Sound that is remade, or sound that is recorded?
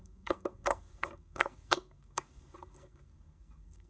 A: remade